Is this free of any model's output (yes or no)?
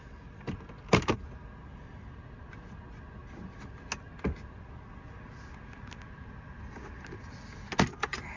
yes